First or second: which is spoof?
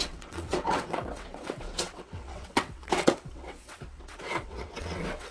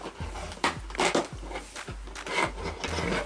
first